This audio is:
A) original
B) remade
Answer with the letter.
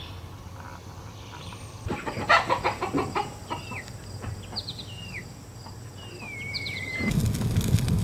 A